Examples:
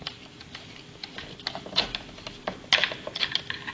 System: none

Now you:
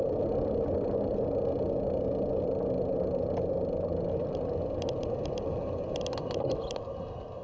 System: none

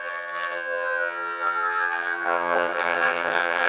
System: vocoder, HiFi-GAN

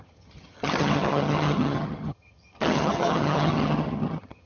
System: vocoder, HiFi-GAN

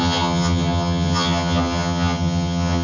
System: vocoder, HiFi-GAN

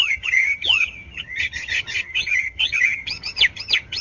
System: vocoder, HiFi-GAN